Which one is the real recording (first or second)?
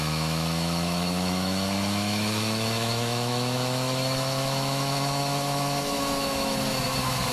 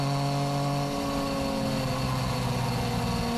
second